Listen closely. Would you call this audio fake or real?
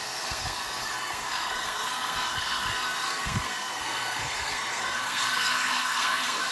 fake